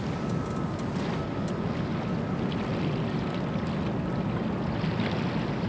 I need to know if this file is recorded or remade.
recorded